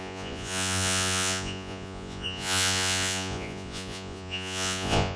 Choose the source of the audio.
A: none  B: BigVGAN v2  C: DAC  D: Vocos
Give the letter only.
D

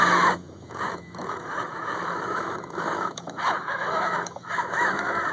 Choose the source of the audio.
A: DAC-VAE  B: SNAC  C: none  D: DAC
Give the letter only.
A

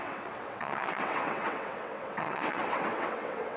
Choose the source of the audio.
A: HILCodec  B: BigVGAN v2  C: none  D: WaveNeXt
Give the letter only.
D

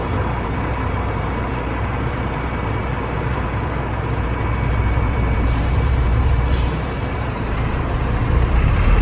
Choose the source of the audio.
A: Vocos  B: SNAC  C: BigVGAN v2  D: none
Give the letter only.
C